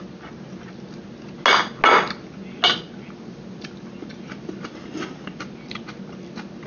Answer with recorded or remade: recorded